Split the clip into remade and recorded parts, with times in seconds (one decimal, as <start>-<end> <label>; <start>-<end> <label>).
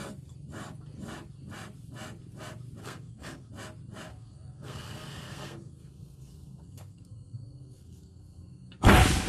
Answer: 0.0-2.8 recorded; 2.8-3.5 remade; 3.5-4.1 recorded; 4.1-8.9 remade; 8.9-9.3 recorded